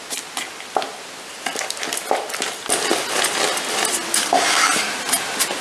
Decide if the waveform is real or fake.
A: real